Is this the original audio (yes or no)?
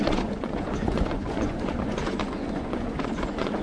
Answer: no